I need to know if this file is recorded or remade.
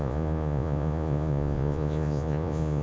remade